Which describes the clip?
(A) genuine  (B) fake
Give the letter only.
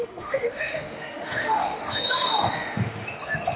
B